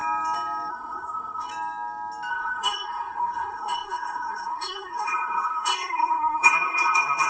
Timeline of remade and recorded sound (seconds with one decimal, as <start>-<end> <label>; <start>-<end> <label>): 0.0-0.7 recorded; 0.7-1.5 remade; 1.5-2.3 recorded; 2.3-7.3 remade